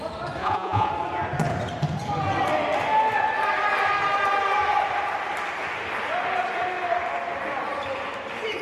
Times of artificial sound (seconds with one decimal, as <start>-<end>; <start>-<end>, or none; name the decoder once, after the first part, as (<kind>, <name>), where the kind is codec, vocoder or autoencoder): 0.4-0.9 (vocoder, Vocos)